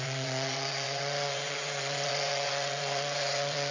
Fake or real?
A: fake